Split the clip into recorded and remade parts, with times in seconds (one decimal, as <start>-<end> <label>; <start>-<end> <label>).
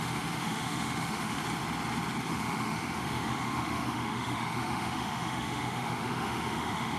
0.0-1.4 remade; 1.4-2.3 recorded; 2.3-7.0 remade